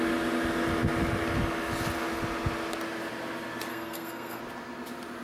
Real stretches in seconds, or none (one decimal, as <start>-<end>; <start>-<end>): 0.0-3.7; 4.4-5.2